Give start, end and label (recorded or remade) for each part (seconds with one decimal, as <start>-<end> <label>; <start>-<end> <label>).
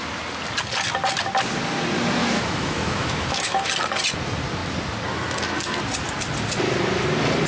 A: 0.0-2.2 recorded; 2.2-3.7 remade; 3.7-7.5 recorded